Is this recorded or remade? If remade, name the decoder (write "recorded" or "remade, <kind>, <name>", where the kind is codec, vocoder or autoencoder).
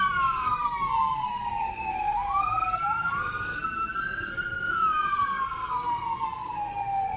remade, codec, SNAC